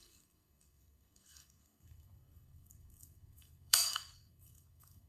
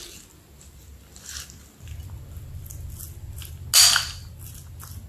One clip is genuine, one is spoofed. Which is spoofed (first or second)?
first